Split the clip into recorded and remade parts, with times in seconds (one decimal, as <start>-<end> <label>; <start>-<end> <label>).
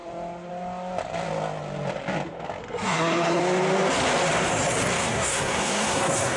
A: 0.0-2.6 recorded; 2.6-3.4 remade; 3.4-5.0 recorded; 5.0-6.4 remade